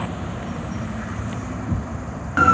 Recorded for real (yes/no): no